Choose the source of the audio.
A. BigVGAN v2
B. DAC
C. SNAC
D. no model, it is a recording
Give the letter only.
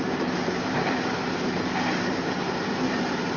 A